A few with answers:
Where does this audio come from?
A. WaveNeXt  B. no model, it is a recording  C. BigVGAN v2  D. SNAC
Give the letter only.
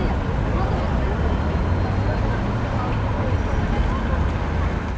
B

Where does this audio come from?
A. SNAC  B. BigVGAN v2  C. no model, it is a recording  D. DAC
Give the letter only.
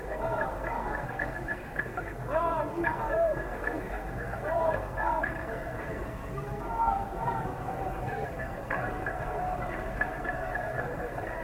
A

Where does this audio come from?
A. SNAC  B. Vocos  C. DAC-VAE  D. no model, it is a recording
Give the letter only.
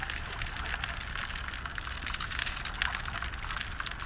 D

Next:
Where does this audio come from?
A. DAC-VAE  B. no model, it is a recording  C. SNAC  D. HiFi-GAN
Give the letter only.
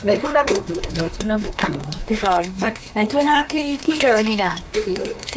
C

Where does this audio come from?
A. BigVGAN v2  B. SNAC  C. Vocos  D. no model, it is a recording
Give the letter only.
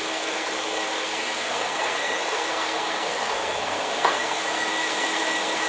B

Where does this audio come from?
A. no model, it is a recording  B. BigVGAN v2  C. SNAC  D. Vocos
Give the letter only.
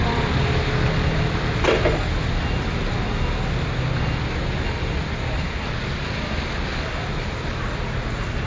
A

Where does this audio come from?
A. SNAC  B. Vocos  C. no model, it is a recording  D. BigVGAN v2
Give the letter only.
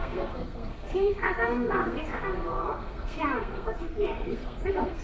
A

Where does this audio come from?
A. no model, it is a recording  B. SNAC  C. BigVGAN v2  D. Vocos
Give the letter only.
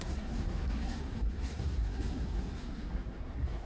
B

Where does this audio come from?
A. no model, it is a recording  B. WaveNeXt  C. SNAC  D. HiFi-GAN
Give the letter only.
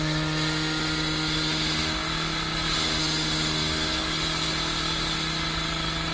A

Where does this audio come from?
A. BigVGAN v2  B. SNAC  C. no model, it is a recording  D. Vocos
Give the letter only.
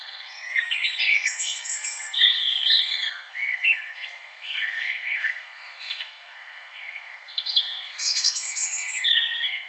B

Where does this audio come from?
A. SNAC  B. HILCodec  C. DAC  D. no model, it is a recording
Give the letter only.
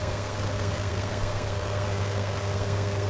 A